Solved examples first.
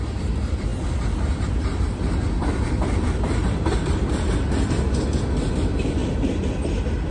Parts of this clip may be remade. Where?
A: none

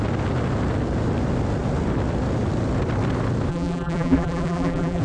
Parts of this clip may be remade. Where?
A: 3.5-5.0 (vocoder, BigVGAN v2)

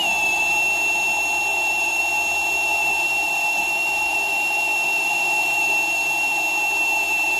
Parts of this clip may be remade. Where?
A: 1.5-2.0 (vocoder, BigVGAN v2); 2.7-5.7

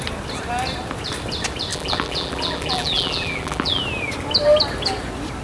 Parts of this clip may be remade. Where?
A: 1.7-3.8 (vocoder, BigVGAN v2)